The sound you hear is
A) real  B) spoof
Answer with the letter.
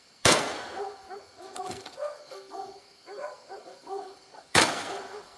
B